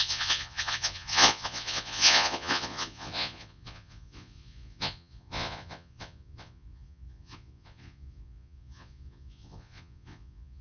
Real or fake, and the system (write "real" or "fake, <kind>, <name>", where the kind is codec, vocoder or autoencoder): fake, vocoder, Vocos